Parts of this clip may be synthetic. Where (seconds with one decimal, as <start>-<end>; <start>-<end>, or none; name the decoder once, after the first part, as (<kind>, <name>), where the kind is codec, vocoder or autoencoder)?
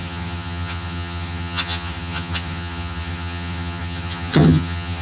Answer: 0.0-5.0 (vocoder, HiFi-GAN)